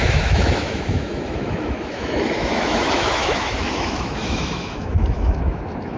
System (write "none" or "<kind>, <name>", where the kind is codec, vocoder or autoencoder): autoencoder, DAC-VAE